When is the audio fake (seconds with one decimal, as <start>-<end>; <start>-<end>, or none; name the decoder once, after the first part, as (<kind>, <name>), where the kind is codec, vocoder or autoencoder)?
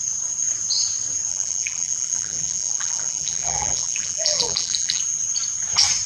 1.3-5.0 (vocoder, BigVGAN v2)